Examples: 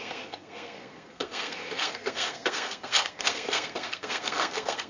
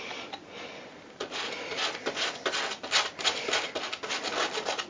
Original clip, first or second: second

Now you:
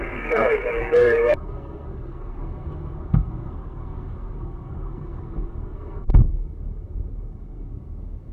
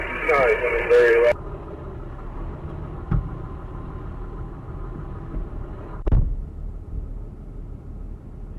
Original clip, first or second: second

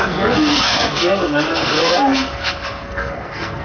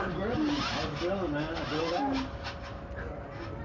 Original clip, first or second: second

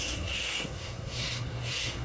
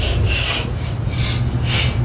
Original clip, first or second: second